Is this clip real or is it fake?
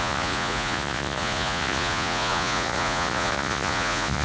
fake